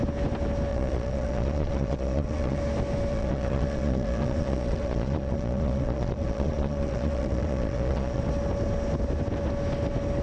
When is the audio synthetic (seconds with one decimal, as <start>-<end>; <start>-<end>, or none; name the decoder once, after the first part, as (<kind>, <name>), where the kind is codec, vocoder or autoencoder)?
0.7-2.6 (vocoder, Vocos); 3.1-8.2